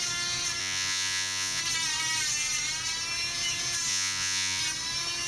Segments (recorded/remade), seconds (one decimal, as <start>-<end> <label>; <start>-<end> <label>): 0.0-0.6 recorded; 0.6-1.6 remade; 1.6-3.9 recorded; 3.9-4.6 remade; 4.6-5.3 recorded